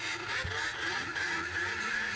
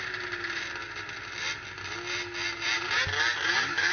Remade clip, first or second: first